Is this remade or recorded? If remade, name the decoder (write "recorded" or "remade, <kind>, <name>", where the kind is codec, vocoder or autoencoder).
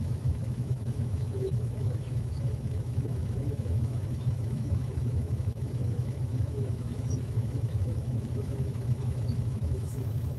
remade, autoencoder, DAC-VAE